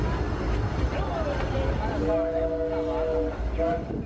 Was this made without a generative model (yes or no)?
yes